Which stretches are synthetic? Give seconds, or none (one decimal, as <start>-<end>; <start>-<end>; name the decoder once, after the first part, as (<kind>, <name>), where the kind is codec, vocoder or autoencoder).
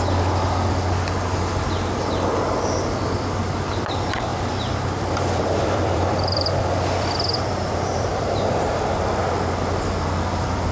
4.3-8.7 (vocoder, BigVGAN v2)